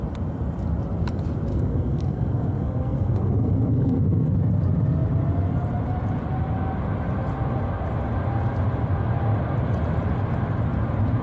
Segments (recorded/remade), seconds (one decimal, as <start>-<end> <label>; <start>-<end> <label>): 0.0-1.5 recorded; 1.5-4.3 remade; 4.3-11.2 recorded